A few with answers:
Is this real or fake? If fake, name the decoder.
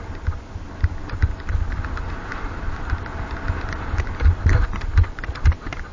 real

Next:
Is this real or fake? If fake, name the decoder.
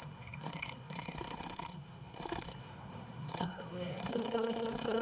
fake, codec, SNAC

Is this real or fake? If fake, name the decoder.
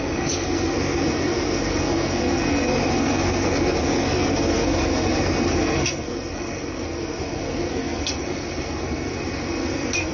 fake, codec, SNAC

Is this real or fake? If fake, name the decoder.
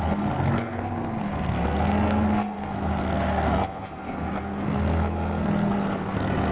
fake, codec, SNAC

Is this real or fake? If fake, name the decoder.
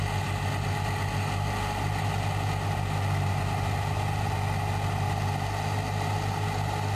real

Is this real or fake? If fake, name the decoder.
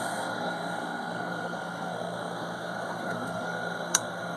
fake, codec, SNAC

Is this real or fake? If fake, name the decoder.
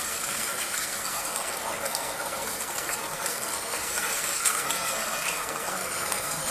fake, codec, SNAC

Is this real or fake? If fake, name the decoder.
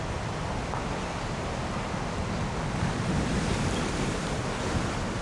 real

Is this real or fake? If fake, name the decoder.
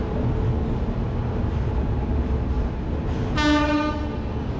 real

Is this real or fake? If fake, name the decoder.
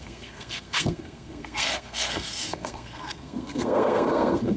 fake, codec, SNAC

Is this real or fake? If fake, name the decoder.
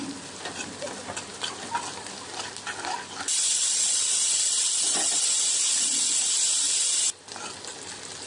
real